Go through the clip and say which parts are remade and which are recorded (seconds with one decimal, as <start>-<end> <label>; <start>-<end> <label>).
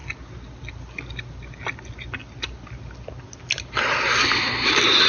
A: 0.0-5.1 recorded